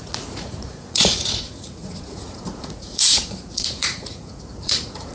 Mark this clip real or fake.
fake